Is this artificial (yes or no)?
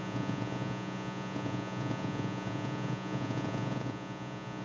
yes